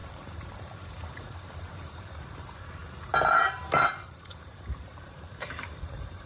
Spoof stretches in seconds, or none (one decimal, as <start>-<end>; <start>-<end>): 0.0-2.8; 3.9-6.3